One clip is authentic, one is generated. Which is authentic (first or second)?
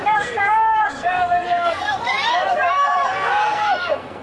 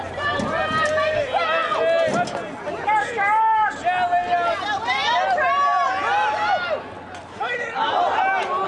second